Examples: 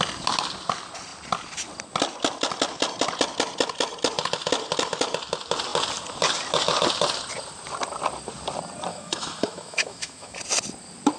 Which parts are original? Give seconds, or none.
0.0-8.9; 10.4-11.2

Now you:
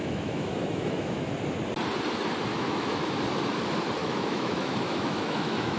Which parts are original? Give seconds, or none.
1.3-2.5; 3.2-4.0

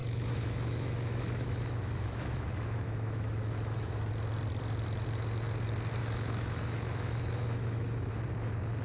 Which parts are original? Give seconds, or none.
4.1-6.0; 8.1-8.8

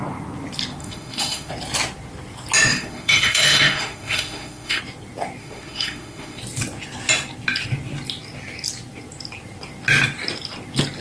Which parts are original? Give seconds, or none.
0.0-0.8; 1.5-2.7; 4.8-5.4; 6.4-11.0